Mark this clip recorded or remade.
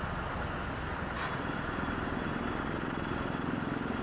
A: recorded